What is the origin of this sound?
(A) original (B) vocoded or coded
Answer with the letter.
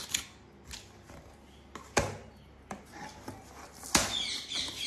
A